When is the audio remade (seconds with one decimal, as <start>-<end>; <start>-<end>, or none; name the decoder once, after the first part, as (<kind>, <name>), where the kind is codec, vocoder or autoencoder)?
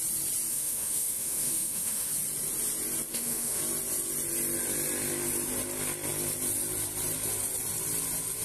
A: 0.5-2.1 (autoencoder, DAC-VAE); 3.1-3.6